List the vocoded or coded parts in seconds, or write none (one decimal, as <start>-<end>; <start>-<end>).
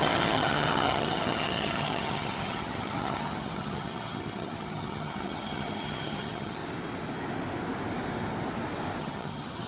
0.0-6.6; 9.0-9.7